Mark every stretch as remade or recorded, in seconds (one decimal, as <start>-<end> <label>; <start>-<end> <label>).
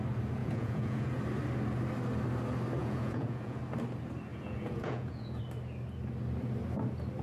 0.0-0.4 recorded; 0.4-1.2 remade; 1.2-2.8 recorded; 2.8-3.6 remade; 3.6-4.3 recorded; 4.3-5.4 remade; 5.4-7.2 recorded